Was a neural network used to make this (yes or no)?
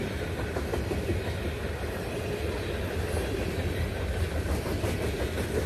yes